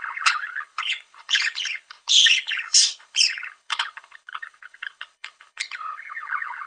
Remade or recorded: remade